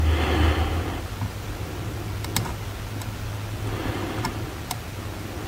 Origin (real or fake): real